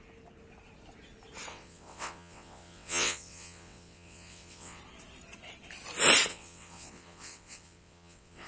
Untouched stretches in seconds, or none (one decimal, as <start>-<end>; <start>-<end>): 0.0-1.5; 4.8-6.3